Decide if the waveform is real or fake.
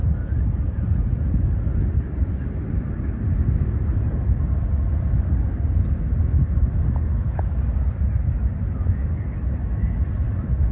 real